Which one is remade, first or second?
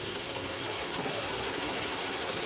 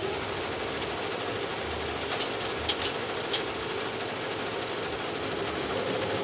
first